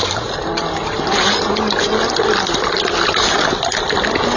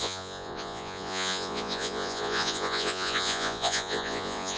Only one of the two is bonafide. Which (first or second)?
first